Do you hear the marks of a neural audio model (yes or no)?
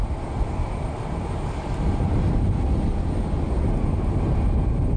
no